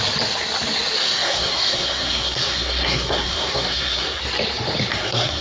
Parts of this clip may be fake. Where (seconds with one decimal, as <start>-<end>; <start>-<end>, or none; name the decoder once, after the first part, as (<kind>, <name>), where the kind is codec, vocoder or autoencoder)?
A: 1.0-4.2 (codec, SNAC); 4.9-5.4